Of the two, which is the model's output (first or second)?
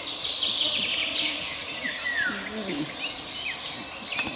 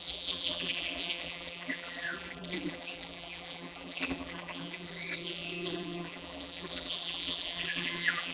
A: second